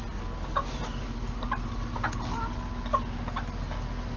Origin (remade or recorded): recorded